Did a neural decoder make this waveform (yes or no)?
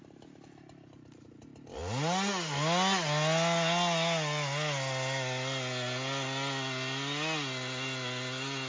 no